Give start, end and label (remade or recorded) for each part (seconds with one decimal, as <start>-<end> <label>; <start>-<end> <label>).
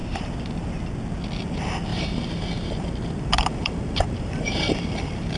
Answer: 0.0-1.9 recorded; 1.9-5.4 remade